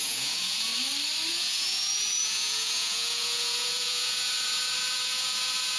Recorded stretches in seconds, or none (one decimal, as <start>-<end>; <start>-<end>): 0.7-1.3